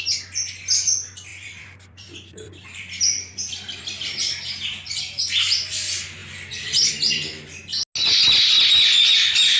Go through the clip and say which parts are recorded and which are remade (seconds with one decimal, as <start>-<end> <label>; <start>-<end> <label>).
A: 0.0-1.3 recorded; 1.3-5.0 remade; 5.0-6.2 recorded; 6.2-6.9 remade; 6.9-9.6 recorded